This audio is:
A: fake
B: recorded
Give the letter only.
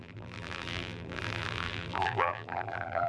A